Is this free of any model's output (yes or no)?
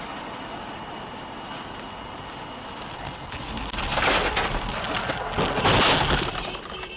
yes